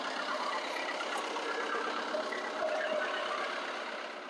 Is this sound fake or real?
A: real